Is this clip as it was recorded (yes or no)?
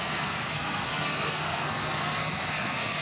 no